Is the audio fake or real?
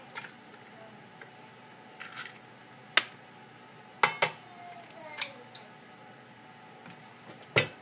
real